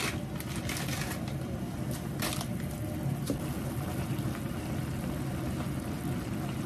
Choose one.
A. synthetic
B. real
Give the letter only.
B